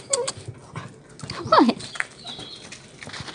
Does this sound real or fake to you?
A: real